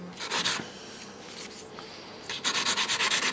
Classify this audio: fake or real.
real